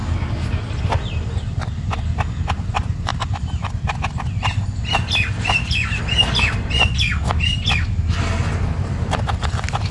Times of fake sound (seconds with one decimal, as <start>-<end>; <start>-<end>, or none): 0.0-3.1; 5.4-7.1; 8.3-9.9